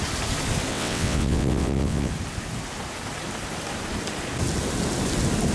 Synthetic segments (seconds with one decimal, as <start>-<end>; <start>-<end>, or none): 0.7-2.1